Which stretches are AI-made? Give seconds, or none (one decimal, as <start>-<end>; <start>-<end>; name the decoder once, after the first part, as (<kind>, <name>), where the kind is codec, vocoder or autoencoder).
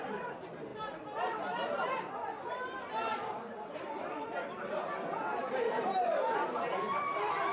0.0-7.5 (vocoder, BigVGAN v2)